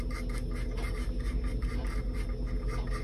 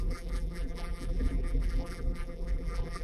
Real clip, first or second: first